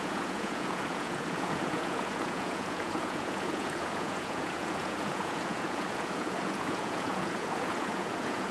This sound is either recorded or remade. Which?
remade